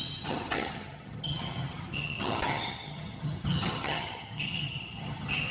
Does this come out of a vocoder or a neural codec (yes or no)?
yes